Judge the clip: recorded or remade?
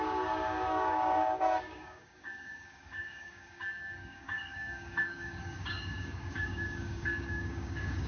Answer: remade